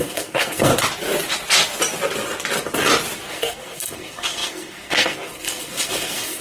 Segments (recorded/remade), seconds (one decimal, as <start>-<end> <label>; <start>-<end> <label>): 0.0-0.7 remade; 0.7-3.3 recorded; 3.3-6.4 remade